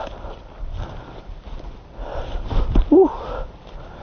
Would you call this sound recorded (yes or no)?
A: yes